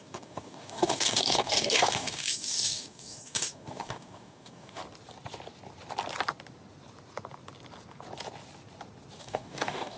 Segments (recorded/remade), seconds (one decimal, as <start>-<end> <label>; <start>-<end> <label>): 0.0-4.8 remade; 4.8-9.2 recorded; 9.2-10.0 remade